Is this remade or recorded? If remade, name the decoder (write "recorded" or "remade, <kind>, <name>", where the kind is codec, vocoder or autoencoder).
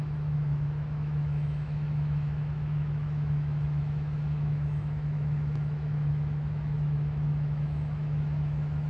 remade, autoencoder, DAC-VAE